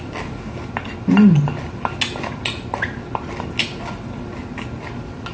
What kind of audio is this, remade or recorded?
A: recorded